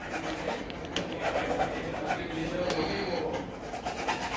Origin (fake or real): real